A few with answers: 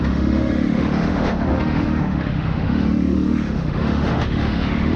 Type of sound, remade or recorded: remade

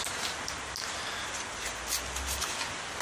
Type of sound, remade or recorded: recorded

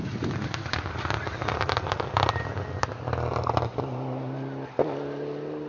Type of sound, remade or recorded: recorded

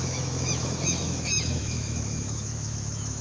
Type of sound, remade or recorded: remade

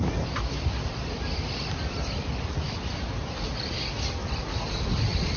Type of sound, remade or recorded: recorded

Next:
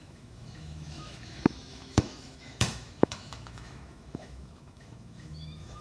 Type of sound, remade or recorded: remade